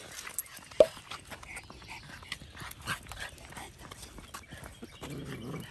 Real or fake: real